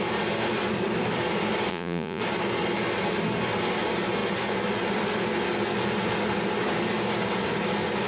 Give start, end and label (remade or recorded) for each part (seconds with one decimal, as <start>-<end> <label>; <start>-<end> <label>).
0.0-1.7 recorded; 1.7-2.2 remade; 2.2-8.1 recorded

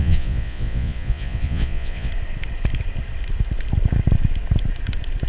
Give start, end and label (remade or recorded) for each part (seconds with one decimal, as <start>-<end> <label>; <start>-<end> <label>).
0.0-2.1 remade; 2.1-5.3 recorded

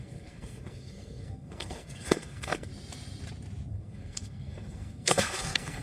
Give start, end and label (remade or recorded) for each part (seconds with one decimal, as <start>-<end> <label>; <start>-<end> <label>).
0.0-2.7 remade; 2.7-3.7 recorded; 3.7-5.8 remade